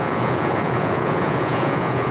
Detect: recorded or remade remade